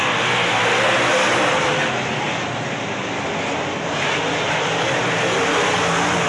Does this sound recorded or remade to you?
recorded